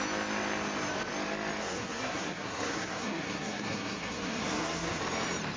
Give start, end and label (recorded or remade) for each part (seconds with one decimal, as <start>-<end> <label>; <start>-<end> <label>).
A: 0.0-1.6 recorded; 1.6-5.0 remade; 5.0-5.6 recorded